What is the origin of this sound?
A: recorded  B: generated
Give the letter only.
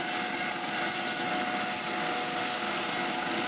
A